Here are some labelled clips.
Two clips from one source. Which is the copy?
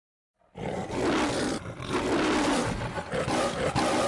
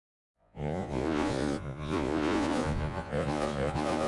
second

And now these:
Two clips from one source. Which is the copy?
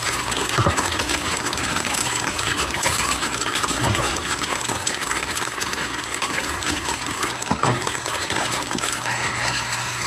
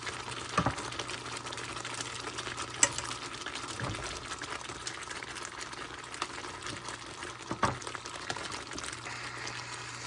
first